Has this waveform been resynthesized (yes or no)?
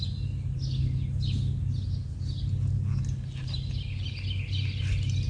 no